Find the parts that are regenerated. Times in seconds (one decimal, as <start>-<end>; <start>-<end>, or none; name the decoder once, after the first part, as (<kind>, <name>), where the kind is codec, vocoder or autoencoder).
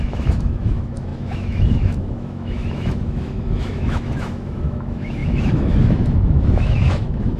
0.0-7.4 (autoencoder, DAC-VAE)